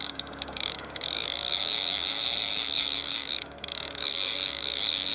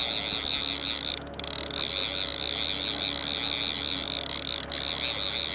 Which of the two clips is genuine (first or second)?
second